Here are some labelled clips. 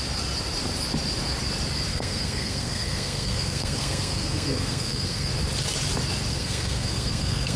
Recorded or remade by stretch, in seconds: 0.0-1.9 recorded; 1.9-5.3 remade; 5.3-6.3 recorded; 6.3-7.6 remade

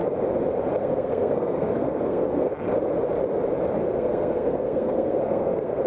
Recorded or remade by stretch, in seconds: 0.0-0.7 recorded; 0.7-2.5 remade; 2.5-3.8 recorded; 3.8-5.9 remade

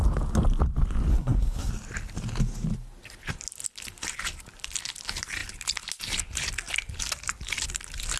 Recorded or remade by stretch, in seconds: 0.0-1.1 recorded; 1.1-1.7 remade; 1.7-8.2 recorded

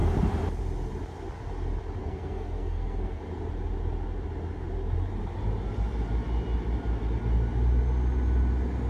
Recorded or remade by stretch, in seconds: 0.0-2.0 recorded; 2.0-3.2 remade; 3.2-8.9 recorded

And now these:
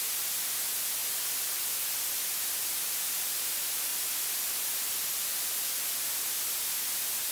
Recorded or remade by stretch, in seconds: 0.0-7.3 recorded

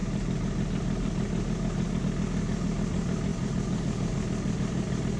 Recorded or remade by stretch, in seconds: 0.0-5.2 recorded

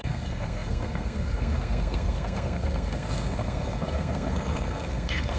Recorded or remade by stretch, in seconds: 0.0-5.4 remade